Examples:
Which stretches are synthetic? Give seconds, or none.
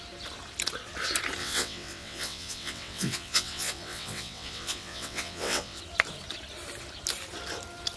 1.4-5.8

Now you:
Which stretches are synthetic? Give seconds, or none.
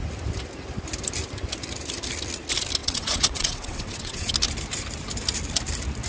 2.8-4.3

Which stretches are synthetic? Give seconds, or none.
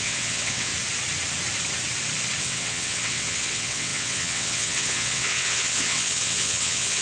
0.0-0.7; 2.4-7.0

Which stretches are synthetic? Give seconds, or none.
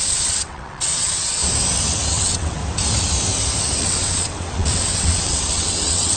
0.0-1.4; 1.9-2.6; 3.8-6.2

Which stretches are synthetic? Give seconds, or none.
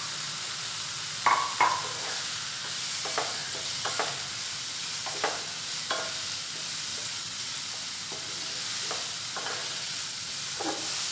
3.4-3.9; 6.9-7.6; 9.6-10.3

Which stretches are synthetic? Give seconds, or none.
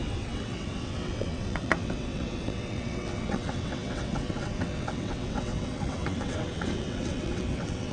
0.0-7.9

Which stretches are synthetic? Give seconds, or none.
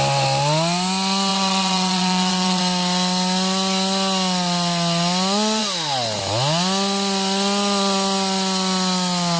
1.3-2.6